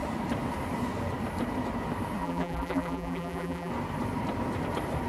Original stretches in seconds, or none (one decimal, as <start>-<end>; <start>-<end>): 0.0-2.2; 3.7-5.1